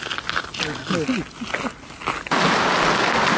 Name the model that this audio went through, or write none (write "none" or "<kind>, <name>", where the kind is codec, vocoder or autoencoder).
none